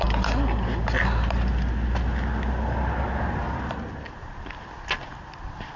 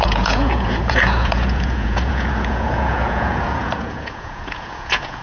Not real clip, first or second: second